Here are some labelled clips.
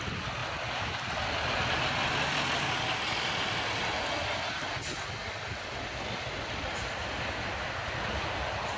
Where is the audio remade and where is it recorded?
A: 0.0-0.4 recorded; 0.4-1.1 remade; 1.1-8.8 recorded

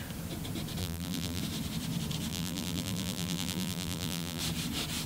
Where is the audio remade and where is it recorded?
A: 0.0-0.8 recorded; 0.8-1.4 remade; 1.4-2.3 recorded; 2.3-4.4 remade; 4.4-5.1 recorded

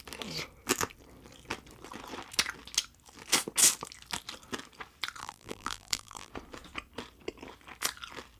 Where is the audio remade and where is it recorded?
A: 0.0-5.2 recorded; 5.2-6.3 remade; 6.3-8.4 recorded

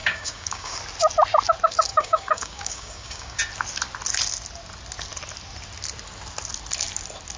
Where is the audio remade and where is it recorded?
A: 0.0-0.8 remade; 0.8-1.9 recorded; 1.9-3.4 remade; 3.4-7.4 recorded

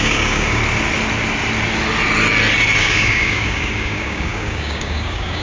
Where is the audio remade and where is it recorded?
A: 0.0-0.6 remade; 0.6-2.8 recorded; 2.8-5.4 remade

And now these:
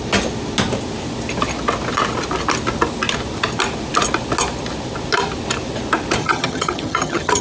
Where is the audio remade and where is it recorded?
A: 0.0-6.2 recorded; 6.2-7.4 remade